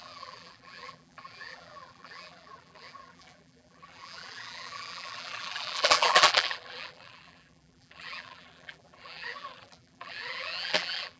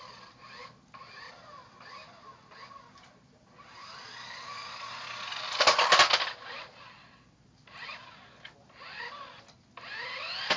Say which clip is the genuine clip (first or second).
second